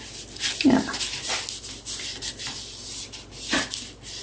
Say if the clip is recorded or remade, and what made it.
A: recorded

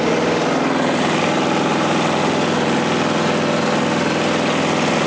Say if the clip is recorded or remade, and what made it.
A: recorded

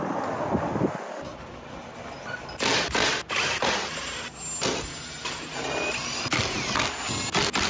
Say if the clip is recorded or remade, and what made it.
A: recorded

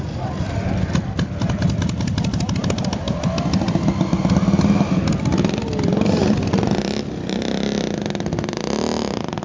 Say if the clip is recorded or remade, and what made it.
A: recorded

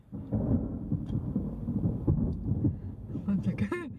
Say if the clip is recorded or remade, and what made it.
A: recorded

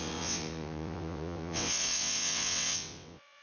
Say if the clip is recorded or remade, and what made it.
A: remade, vocoder, WaveNeXt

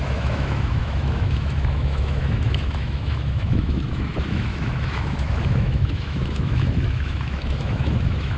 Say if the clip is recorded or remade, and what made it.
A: remade, autoencoder, DAC-VAE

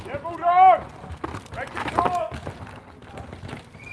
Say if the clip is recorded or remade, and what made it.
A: recorded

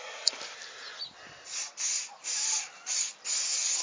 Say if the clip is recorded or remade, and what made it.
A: recorded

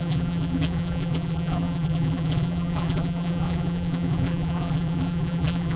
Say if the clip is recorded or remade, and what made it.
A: remade, vocoder, BigVGAN v2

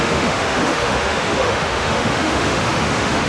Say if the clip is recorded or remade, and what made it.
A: remade, autoencoder, DAC-VAE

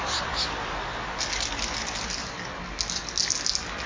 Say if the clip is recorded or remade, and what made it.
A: recorded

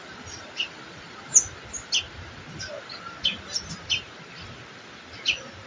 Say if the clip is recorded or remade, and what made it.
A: recorded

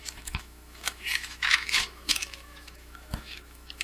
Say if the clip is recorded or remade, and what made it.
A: remade, autoencoder, DAC-VAE